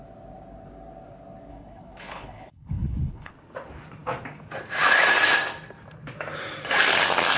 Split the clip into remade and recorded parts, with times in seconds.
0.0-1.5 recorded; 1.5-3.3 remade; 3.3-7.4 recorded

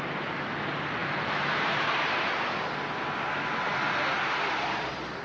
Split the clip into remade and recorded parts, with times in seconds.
0.0-1.0 recorded; 1.0-1.9 remade; 1.9-5.2 recorded

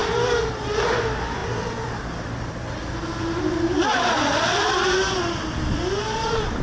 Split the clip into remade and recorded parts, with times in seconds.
0.0-6.6 recorded